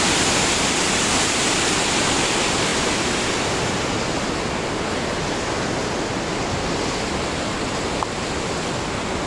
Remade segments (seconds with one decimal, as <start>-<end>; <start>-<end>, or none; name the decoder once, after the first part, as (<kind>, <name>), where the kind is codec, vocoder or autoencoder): none